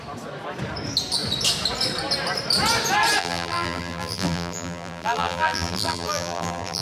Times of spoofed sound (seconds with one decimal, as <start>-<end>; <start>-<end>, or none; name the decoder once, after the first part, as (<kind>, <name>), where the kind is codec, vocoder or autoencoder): 3.2-6.8 (vocoder, BigVGAN v2)